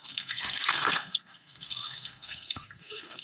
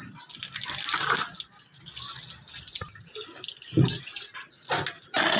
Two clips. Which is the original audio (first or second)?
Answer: second